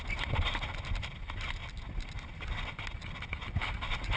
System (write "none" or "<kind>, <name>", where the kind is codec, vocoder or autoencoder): none